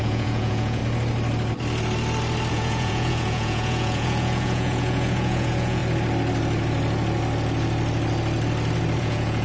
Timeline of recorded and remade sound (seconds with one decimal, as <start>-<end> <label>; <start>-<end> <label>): 0.0-0.8 remade; 0.8-2.5 recorded; 2.5-5.8 remade; 5.8-9.0 recorded; 9.0-9.4 remade